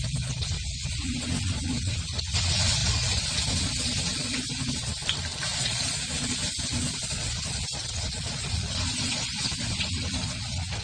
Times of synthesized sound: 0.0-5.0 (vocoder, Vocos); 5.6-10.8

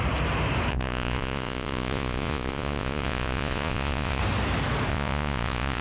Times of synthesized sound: 0.7-4.2 (vocoder, Vocos); 4.9-5.8